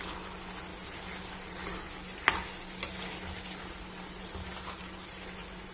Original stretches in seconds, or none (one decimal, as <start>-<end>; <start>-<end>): 0.0-5.7